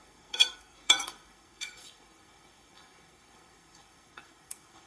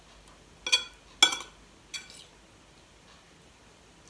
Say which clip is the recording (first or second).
second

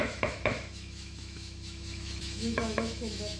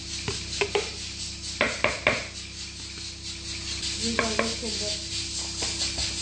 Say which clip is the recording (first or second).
second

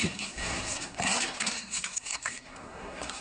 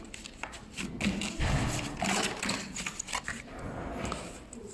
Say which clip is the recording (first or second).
second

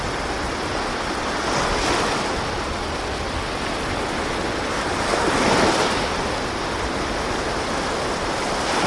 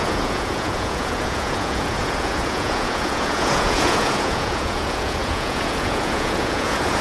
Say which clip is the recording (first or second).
first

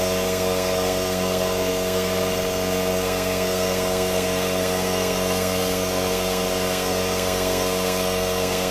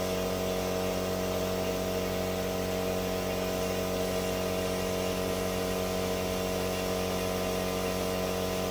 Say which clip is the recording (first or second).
second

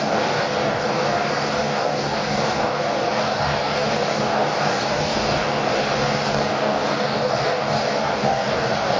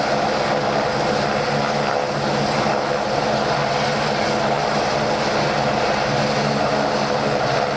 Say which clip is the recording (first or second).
second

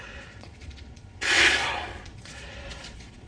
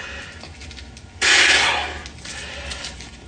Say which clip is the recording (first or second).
second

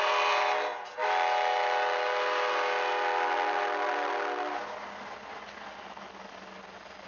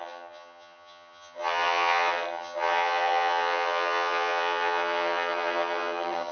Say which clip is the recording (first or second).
first